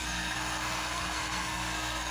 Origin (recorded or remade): remade